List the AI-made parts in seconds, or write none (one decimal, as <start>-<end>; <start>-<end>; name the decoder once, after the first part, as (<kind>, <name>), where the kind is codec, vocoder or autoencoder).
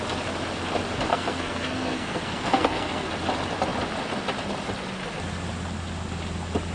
1.1-3.1 (codec, SNAC)